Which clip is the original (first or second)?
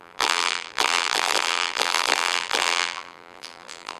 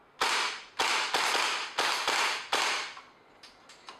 second